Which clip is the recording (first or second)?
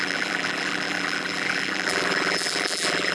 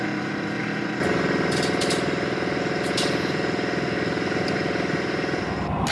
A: second